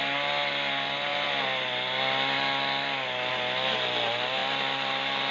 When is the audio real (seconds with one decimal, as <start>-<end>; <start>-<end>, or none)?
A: 0.0-5.3